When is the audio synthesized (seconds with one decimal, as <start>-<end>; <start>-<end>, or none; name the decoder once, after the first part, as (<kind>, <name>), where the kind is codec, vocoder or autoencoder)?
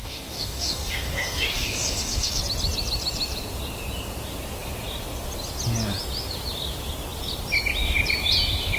0.0-2.4 (codec, DAC)